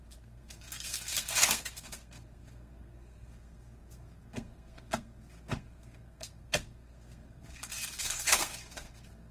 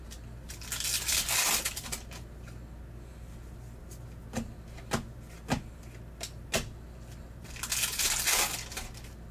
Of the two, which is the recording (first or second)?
second